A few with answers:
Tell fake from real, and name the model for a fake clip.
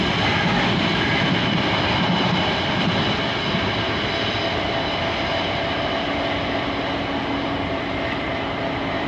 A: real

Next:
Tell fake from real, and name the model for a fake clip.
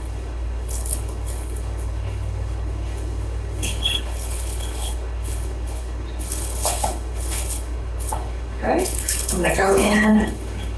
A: fake, codec, HILCodec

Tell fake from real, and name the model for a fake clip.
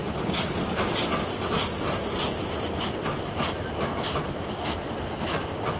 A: real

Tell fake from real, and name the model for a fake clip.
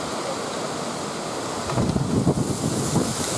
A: real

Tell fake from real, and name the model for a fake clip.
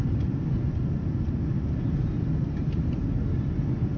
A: real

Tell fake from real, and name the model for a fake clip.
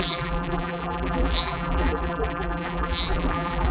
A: fake, vocoder, BigVGAN v2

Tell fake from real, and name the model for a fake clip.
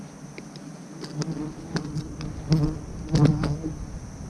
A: real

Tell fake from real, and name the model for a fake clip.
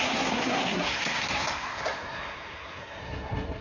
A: fake, codec, SNAC